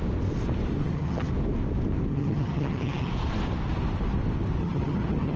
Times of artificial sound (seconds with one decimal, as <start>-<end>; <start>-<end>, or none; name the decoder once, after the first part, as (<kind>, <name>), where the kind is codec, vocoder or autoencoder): 0.8-1.3 (vocoder, HiFi-GAN); 2.1-3.1; 4.6-5.4